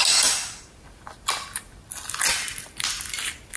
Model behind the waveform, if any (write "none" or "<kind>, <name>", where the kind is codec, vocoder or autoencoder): none